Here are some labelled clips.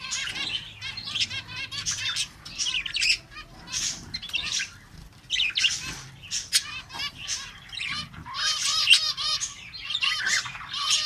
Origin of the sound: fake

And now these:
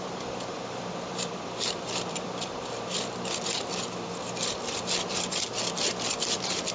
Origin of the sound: fake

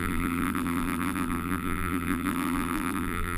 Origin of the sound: fake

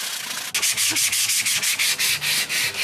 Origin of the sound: real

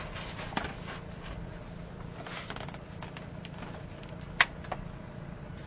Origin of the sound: real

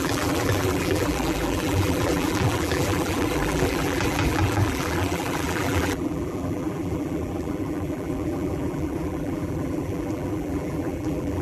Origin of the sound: fake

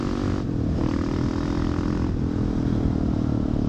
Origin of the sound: real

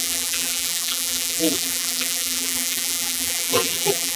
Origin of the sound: fake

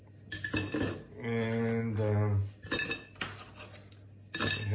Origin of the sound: real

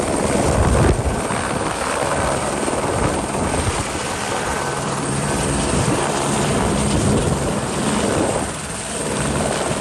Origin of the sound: fake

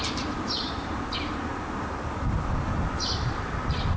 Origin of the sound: fake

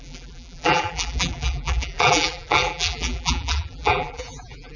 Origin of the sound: fake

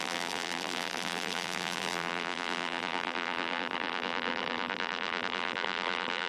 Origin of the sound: fake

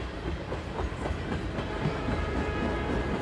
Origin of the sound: real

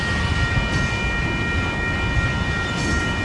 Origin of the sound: real